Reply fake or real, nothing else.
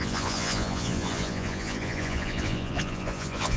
fake